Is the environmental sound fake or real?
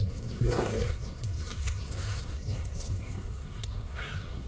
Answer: fake